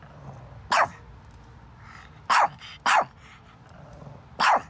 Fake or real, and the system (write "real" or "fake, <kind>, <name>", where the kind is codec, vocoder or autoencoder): real